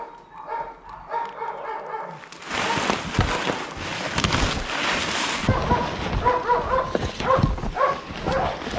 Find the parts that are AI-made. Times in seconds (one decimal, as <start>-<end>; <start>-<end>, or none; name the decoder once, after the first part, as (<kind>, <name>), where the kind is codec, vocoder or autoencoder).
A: none